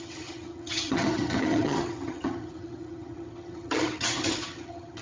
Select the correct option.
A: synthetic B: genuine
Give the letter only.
A